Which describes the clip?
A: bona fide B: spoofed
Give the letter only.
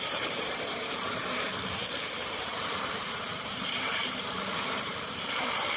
B